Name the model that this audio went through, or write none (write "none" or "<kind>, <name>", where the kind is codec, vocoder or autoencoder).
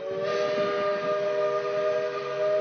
none